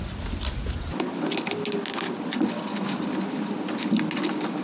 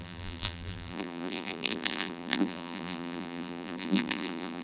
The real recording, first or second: first